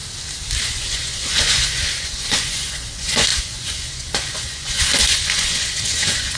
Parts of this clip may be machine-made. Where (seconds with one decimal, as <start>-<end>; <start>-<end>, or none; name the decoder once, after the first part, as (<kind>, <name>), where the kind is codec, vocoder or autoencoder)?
0.6-6.4 (vocoder, Vocos)